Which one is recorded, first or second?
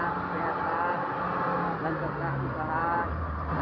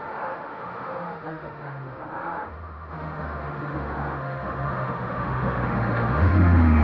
first